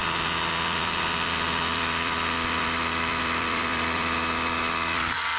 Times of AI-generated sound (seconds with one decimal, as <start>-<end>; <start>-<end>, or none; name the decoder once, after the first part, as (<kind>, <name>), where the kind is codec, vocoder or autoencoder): 0.0-5.4 (vocoder, BigVGAN v2)